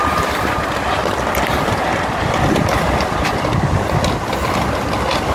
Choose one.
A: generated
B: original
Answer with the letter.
B